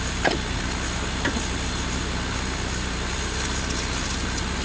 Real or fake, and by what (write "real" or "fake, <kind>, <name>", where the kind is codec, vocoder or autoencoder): real